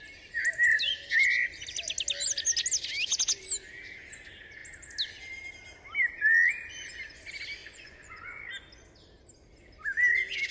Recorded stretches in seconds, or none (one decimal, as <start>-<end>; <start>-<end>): 0.0-7.6; 8.4-10.5